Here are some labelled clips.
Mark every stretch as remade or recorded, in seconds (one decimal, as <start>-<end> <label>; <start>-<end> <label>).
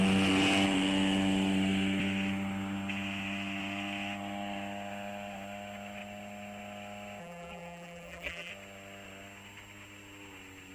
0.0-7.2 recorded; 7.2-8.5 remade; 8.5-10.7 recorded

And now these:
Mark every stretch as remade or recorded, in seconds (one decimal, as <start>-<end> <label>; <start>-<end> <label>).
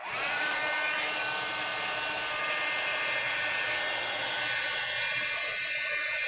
0.0-0.6 remade; 0.6-6.3 recorded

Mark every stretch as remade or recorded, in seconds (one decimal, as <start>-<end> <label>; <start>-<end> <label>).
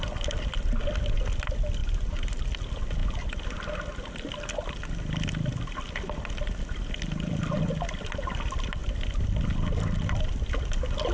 0.0-1.8 recorded; 1.8-2.3 remade; 2.3-11.1 recorded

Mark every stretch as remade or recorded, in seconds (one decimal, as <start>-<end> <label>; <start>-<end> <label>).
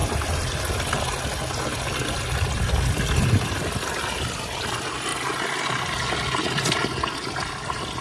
0.0-8.0 recorded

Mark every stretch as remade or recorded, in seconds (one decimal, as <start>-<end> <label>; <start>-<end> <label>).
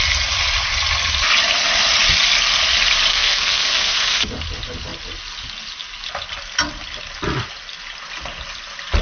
0.0-3.1 recorded; 3.1-4.3 remade; 4.3-9.0 recorded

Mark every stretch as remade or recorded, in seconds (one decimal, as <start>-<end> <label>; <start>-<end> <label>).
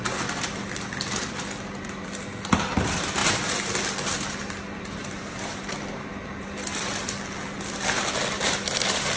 0.0-5.0 recorded; 5.0-6.1 remade; 6.1-9.2 recorded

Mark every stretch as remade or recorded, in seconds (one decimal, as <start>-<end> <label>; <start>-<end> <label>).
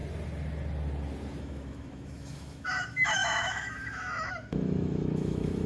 0.0-1.4 recorded; 1.4-5.7 remade